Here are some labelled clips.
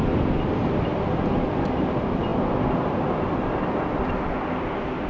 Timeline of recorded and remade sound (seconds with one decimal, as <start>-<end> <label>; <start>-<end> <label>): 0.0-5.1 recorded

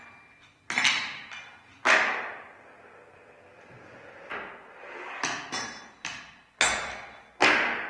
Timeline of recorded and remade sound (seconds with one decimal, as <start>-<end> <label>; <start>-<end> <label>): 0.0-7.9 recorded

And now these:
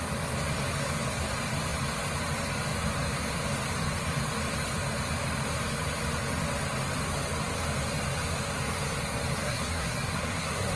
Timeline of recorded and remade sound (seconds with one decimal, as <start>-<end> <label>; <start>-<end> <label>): 0.0-9.4 recorded; 9.4-10.8 remade

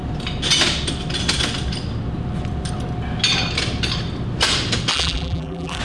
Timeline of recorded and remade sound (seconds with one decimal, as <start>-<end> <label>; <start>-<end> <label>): 0.0-4.9 recorded; 4.9-5.8 remade

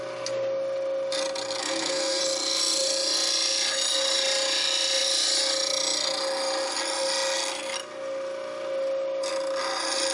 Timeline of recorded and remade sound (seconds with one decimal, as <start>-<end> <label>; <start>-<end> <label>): 0.0-1.6 recorded; 1.6-2.2 remade; 2.2-10.1 recorded

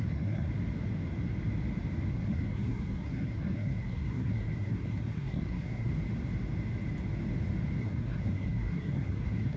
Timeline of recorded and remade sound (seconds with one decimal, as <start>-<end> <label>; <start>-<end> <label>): 0.0-0.5 remade; 0.5-2.1 recorded; 2.1-5.9 remade; 5.9-7.8 recorded; 7.8-9.6 remade

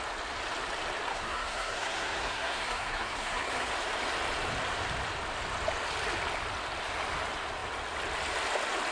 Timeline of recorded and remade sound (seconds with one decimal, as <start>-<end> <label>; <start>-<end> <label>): 0.0-1.1 recorded; 1.1-3.7 remade; 3.7-8.9 recorded